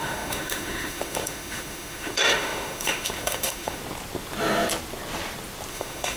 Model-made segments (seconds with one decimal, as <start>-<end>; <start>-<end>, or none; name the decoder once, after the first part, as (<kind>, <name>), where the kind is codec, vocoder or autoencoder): 0.0-3.8 (autoencoder, DAC-VAE); 5.7-6.2